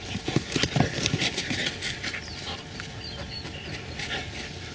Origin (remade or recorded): recorded